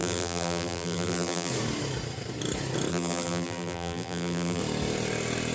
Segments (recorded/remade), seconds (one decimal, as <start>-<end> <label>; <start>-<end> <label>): 0.0-1.5 remade; 1.5-2.9 recorded; 2.9-4.6 remade; 4.6-5.5 recorded